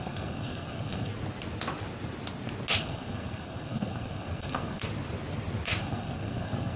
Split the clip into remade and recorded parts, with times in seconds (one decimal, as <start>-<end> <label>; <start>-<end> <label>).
0.0-1.1 remade; 1.1-2.8 recorded; 2.8-4.8 remade; 4.8-5.8 recorded; 5.8-6.8 remade